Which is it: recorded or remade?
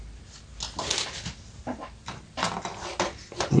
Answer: recorded